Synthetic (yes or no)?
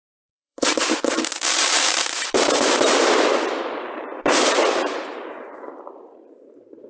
yes